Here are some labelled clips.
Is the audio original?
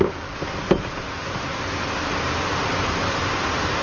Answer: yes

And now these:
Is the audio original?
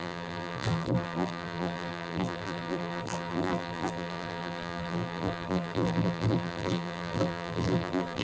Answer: no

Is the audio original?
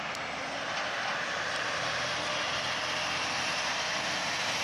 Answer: yes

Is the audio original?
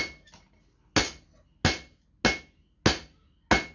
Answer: yes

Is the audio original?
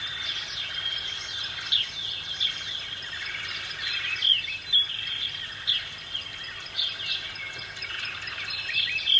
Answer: yes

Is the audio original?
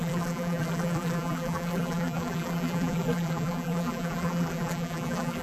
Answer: no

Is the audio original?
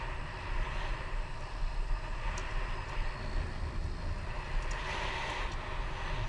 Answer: yes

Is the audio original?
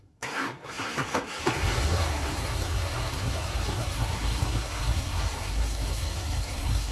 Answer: no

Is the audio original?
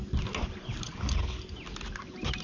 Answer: yes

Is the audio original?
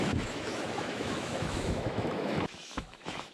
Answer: no